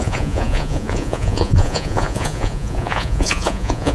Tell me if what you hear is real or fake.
fake